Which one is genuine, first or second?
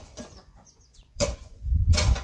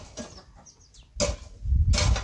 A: second